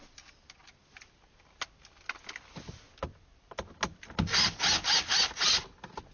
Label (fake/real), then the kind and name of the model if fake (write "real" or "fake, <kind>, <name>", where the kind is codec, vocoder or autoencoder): real